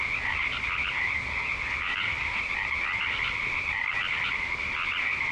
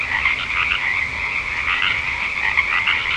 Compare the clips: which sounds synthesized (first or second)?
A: first